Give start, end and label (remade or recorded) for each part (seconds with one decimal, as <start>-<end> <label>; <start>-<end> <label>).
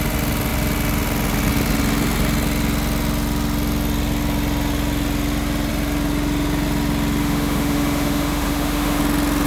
0.0-7.2 recorded; 7.2-9.0 remade; 9.0-9.5 recorded